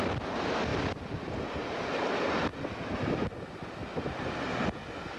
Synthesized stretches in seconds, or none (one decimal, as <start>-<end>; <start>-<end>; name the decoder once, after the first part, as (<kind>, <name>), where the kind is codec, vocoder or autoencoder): 2.5-3.1 (vocoder, BigVGAN v2); 3.8-4.8